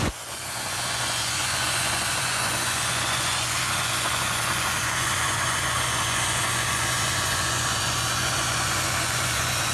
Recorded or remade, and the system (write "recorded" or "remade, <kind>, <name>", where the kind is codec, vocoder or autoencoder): remade, vocoder, Vocos